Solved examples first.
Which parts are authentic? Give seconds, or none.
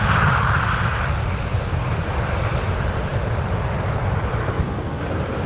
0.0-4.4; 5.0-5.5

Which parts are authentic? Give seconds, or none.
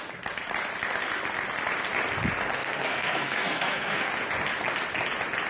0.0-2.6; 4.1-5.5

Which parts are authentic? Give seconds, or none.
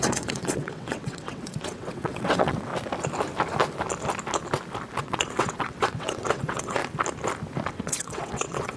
2.7-5.0; 6.8-7.7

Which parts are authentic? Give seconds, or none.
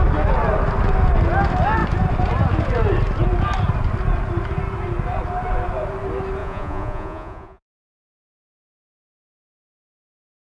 0.0-6.4; 8.4-10.6